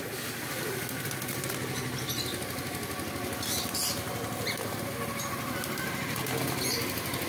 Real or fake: real